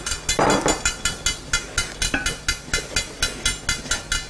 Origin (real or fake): real